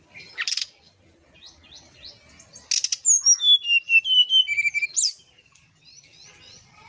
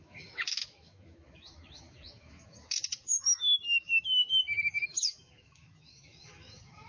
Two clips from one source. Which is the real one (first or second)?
first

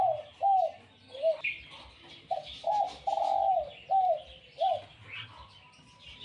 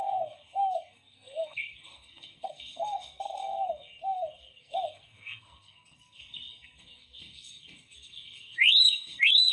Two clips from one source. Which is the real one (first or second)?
first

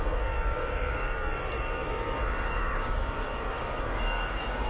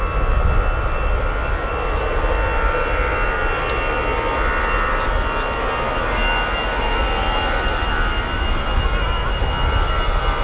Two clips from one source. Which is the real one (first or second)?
second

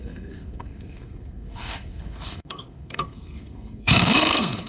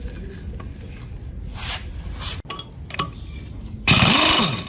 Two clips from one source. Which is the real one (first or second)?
second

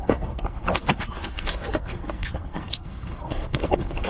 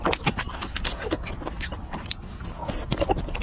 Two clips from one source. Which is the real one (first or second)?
second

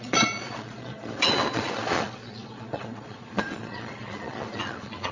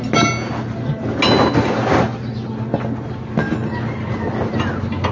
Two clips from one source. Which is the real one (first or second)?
second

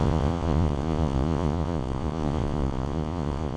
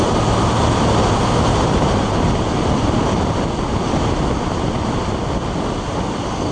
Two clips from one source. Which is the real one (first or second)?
second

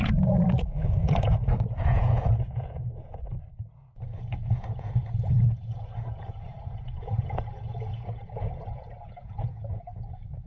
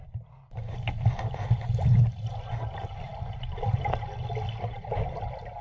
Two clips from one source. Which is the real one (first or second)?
second